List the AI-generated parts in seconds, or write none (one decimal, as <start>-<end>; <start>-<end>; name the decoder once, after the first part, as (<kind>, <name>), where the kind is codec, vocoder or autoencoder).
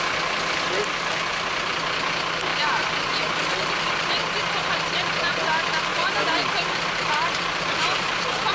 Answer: 2.5-4.1 (vocoder, BigVGAN v2); 5.9-8.5